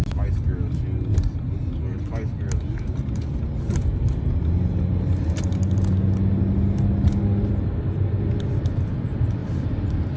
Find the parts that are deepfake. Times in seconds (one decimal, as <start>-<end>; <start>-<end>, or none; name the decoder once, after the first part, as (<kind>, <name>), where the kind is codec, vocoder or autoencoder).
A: 3.9-5.1 (vocoder, BigVGAN v2)